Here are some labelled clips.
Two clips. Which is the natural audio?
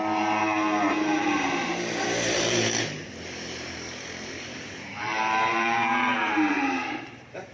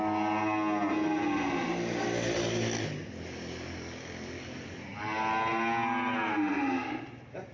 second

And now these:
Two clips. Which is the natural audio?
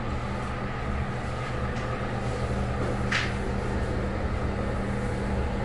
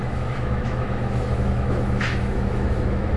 first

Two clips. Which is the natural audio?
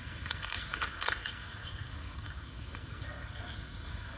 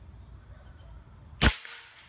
second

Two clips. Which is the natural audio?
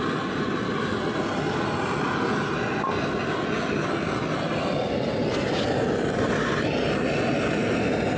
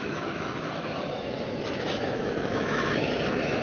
first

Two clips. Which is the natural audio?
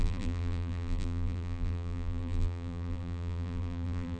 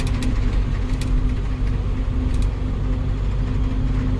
second